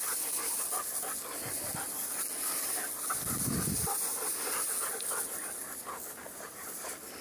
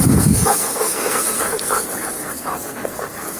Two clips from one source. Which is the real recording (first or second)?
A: first